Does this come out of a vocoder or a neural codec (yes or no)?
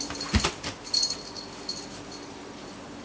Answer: no